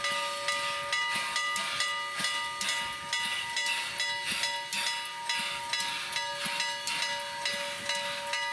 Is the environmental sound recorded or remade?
recorded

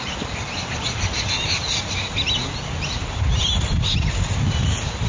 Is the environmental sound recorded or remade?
recorded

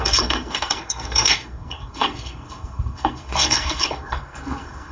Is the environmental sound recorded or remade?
remade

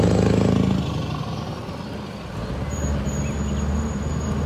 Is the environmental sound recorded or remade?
recorded